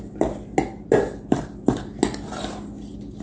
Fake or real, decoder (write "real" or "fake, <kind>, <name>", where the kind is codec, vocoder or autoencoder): real